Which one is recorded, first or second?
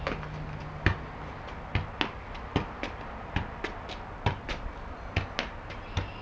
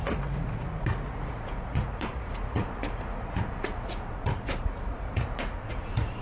first